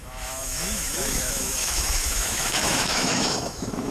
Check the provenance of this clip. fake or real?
fake